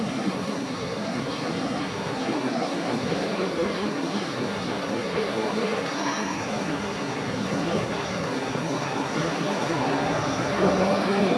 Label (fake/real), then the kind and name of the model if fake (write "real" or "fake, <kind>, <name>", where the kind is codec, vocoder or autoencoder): fake, codec, SNAC